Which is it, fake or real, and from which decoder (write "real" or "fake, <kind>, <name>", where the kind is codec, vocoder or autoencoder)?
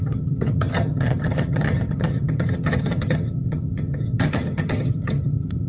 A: fake, vocoder, HiFi-GAN